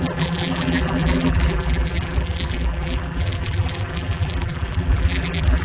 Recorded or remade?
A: remade